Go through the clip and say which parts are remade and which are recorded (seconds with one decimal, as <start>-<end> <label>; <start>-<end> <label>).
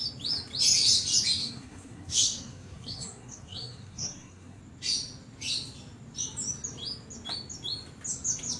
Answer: 0.0-1.4 recorded; 1.4-4.6 remade; 4.6-8.6 recorded